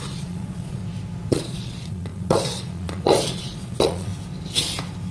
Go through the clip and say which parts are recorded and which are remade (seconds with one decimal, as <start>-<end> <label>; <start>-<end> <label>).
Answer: 0.0-0.8 remade; 0.8-1.3 recorded; 1.3-4.1 remade; 4.1-5.1 recorded